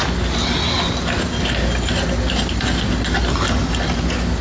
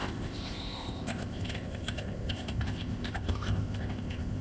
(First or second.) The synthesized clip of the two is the second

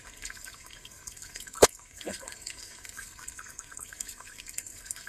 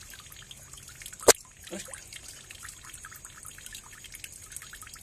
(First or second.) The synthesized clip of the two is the first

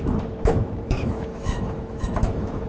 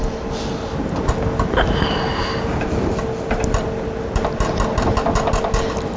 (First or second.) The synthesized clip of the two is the first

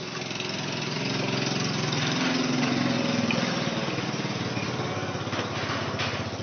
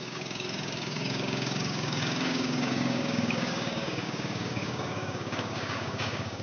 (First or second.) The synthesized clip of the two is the second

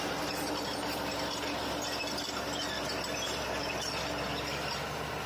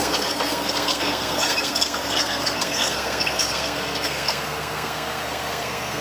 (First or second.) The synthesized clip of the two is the second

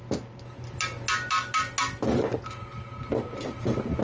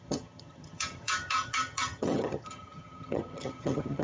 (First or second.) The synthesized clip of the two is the second